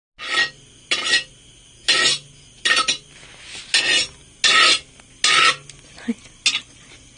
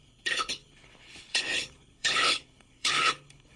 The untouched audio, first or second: first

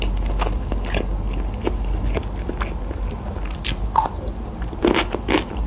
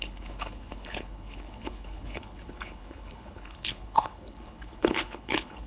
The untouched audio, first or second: first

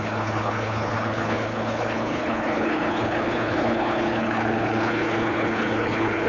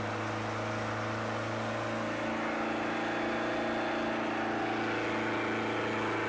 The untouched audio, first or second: second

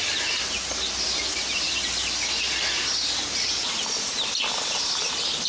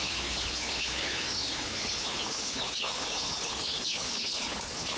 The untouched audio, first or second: first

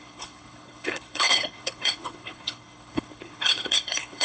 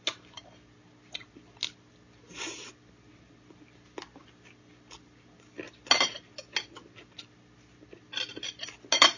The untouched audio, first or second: second